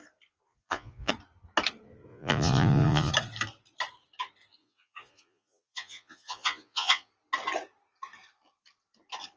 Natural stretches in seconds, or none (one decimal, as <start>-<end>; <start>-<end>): 0.0-0.5; 1.1-2.1; 3.1-4.6; 7.1-9.4